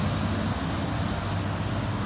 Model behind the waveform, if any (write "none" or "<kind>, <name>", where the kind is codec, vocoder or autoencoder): none